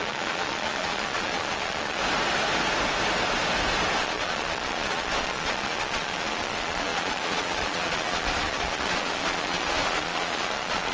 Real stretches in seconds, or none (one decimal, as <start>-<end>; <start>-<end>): 2.0-4.0